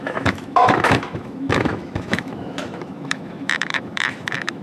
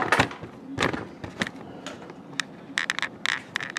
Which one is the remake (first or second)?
first